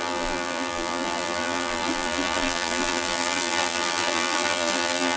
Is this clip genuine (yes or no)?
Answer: no